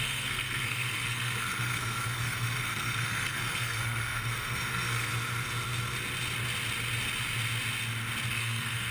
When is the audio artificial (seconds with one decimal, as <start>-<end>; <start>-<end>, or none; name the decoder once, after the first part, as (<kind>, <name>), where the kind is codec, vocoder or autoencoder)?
0.0-5.1 (codec, SNAC); 8.3-8.9